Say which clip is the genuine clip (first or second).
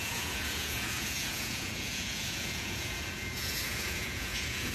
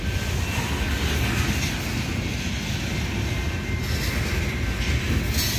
second